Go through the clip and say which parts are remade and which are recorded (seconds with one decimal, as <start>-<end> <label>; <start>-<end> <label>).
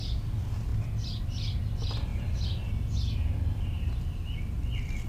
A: 0.0-5.1 recorded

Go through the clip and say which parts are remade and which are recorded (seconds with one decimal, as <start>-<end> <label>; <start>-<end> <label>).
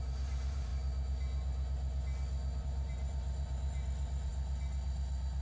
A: 0.0-0.7 remade; 0.7-2.6 recorded; 2.6-4.3 remade; 4.3-5.4 recorded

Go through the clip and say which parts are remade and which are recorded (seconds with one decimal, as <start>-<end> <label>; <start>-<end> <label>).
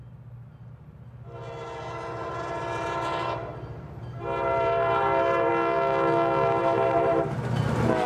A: 0.0-2.2 recorded; 2.2-5.5 remade; 5.5-6.6 recorded; 6.6-7.6 remade; 7.6-8.1 recorded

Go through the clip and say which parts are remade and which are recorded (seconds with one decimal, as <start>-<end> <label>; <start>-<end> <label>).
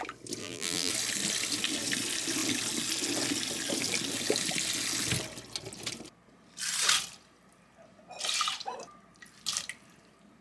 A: 0.0-0.4 recorded; 0.4-0.9 remade; 0.9-10.4 recorded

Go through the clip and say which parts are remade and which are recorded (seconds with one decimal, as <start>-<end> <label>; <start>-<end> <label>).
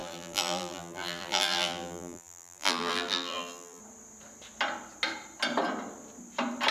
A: 0.0-3.8 remade; 3.8-6.7 recorded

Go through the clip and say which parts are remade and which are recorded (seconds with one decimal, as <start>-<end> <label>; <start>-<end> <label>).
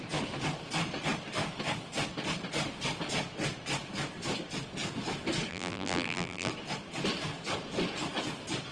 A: 0.0-5.5 recorded; 5.5-6.5 remade; 6.5-8.7 recorded